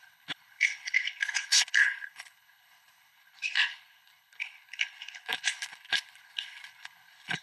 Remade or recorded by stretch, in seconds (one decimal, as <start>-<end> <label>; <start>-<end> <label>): 0.0-7.4 remade